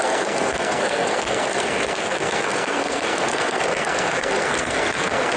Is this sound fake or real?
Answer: fake